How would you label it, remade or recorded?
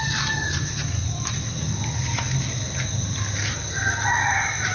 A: recorded